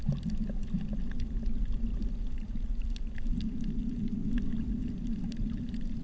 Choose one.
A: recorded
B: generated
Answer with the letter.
A